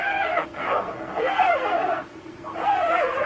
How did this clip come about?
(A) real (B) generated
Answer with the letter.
B